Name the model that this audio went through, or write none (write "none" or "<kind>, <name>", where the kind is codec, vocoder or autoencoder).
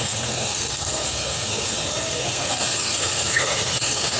codec, SNAC